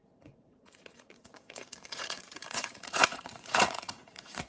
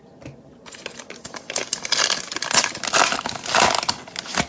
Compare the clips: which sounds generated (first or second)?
first